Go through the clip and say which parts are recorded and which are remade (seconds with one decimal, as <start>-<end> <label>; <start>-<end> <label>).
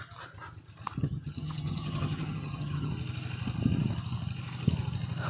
0.0-1.0 recorded; 1.0-2.9 remade; 2.9-5.3 recorded